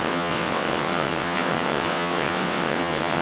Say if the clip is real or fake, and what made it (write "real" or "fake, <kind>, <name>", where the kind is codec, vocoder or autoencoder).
fake, vocoder, WaveNeXt